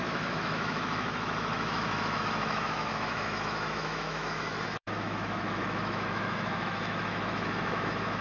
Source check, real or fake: fake